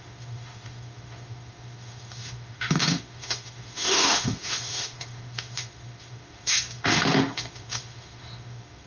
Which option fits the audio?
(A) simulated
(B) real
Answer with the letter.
A